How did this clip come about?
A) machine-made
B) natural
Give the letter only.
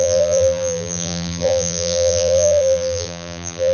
A